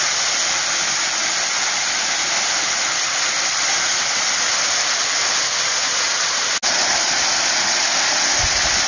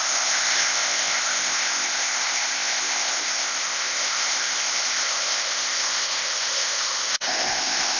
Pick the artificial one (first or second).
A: second